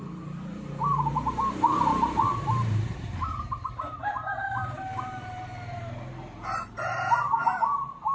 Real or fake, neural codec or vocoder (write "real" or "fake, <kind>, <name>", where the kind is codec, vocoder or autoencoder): fake, vocoder, BigVGAN v2